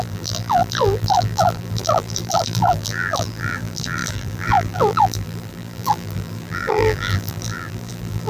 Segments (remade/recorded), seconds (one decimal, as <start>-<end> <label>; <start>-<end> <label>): 0.0-8.3 remade

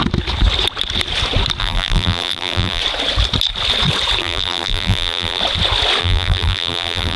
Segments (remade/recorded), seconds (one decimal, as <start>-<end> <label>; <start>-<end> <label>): 0.0-1.6 recorded; 1.6-2.8 remade; 2.8-4.2 recorded; 4.2-5.4 remade; 5.4-6.0 recorded; 6.0-7.2 remade

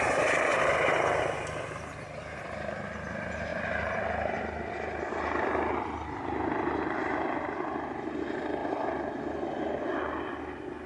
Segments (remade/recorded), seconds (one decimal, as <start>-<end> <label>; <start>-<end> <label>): 0.0-10.9 recorded

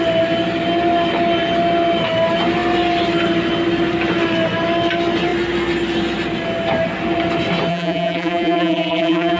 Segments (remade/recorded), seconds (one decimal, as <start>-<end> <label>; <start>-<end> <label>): 0.0-7.7 recorded; 7.7-9.4 remade